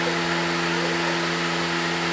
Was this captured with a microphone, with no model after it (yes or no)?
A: yes